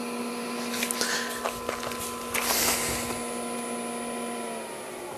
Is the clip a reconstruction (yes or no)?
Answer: no